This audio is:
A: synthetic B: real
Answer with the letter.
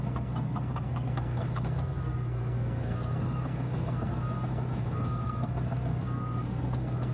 A